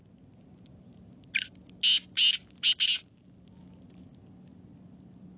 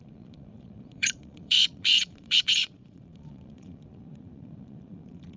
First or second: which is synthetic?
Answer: second